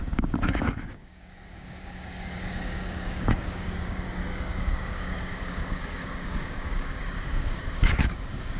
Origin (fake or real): fake